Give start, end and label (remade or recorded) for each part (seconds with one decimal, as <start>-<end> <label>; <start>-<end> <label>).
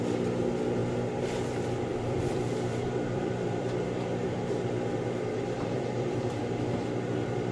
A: 0.0-0.8 recorded; 0.8-1.4 remade; 1.4-1.9 recorded; 1.9-6.4 remade; 6.4-7.5 recorded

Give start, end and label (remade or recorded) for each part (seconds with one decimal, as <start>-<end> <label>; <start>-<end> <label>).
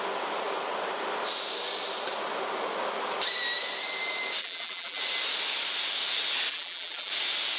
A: 0.0-4.4 recorded; 4.4-5.0 remade; 5.0-6.5 recorded; 6.5-7.1 remade; 7.1-7.6 recorded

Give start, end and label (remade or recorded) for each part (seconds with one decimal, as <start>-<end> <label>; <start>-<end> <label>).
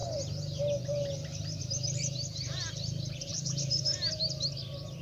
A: 0.0-3.3 recorded; 3.3-3.8 remade; 3.8-5.0 recorded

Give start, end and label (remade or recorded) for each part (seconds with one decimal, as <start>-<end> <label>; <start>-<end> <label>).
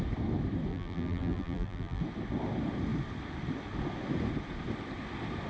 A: 0.0-0.7 recorded; 0.7-2.0 remade; 2.0-5.5 recorded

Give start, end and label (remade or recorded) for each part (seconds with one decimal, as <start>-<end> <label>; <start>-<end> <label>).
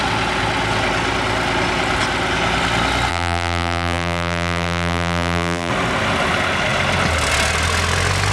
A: 0.0-3.1 recorded; 3.1-5.7 remade; 5.7-8.3 recorded